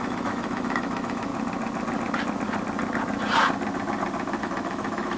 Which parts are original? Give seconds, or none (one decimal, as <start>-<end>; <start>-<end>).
1.3-4.4